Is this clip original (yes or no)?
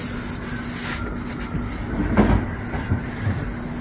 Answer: yes